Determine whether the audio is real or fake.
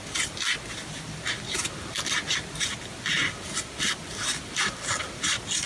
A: real